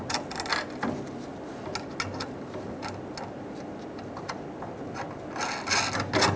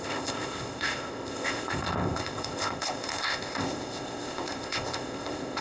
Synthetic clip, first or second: second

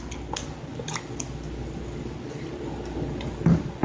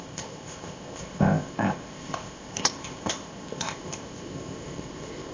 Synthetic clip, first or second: second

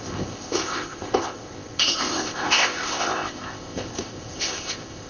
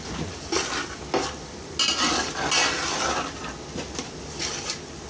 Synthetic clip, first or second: first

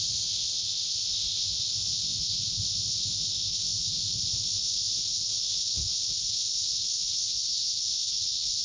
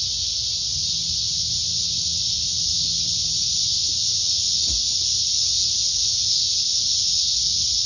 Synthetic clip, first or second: first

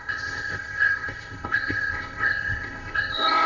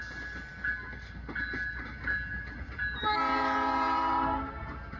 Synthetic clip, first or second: first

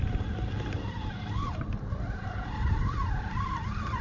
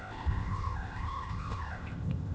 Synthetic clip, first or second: second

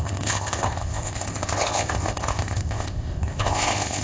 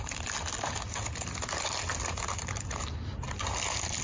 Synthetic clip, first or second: first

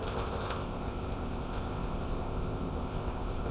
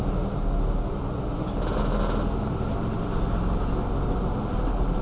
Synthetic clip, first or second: first